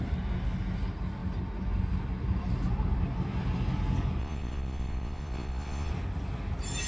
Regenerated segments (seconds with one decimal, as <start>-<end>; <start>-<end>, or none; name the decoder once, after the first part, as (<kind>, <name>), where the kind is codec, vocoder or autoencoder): 4.2-5.9 (vocoder, Vocos)